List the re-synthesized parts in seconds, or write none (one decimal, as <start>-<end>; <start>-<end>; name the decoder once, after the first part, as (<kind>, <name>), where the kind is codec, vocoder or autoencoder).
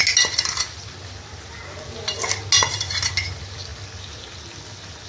none